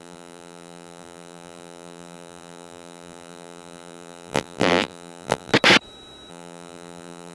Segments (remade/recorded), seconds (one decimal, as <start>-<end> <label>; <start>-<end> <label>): 0.0-5.5 remade; 5.5-6.3 recorded; 6.3-7.3 remade

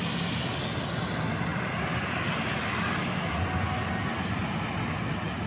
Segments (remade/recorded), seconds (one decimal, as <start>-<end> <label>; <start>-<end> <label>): 0.0-5.5 recorded

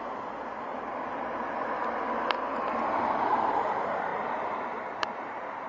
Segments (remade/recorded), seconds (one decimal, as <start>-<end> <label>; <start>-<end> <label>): 0.0-0.7 recorded; 0.7-1.7 remade; 1.7-4.1 recorded; 4.1-5.7 remade

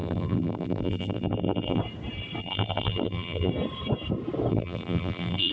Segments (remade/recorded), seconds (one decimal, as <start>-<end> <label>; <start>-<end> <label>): 0.0-1.8 remade; 1.8-2.4 recorded; 2.4-3.5 remade; 3.5-4.5 recorded; 4.5-5.5 remade

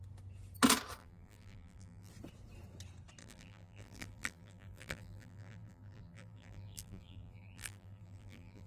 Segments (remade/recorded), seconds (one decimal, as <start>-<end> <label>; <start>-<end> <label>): 0.0-1.0 recorded; 1.0-2.1 remade; 2.1-3.2 recorded; 3.2-8.7 remade

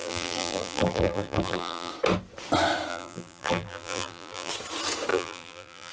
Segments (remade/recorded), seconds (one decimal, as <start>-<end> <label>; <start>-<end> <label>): 0.0-1.9 remade; 1.9-2.9 recorded; 2.9-4.5 remade; 4.5-5.1 recorded; 5.1-5.9 remade

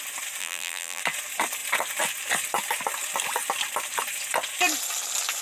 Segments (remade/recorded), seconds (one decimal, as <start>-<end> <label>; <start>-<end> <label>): 0.0-0.4 recorded; 0.4-1.0 remade; 1.0-5.4 recorded

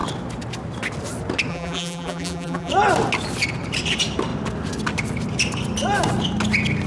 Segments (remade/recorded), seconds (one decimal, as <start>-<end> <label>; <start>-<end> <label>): 0.0-1.5 recorded; 1.5-2.7 remade; 2.7-6.9 recorded